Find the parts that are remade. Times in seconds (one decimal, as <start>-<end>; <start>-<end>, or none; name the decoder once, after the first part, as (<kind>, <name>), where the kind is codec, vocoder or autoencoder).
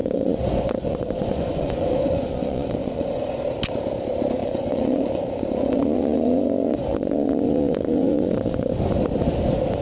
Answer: 0.0-3.4 (vocoder, Vocos); 4.4-8.7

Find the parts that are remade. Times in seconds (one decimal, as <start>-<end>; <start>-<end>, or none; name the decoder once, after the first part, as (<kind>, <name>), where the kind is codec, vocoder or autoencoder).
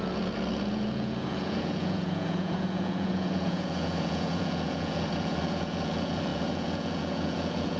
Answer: 0.0-7.8 (vocoder, Vocos)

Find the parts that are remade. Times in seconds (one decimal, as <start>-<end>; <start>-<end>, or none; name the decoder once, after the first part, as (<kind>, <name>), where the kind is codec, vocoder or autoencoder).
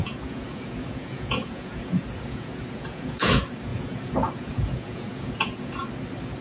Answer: 0.0-5.8 (vocoder, Vocos)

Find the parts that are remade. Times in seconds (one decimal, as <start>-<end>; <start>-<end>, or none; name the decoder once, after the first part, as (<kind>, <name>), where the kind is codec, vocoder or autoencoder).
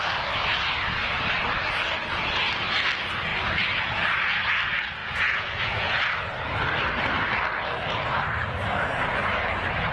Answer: 5.0-6.0 (vocoder, Vocos)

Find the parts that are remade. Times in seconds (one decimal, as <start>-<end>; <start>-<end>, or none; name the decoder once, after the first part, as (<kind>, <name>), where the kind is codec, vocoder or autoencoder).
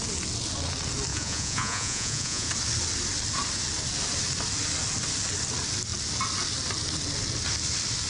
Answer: 1.1-2.5 (vocoder, Vocos)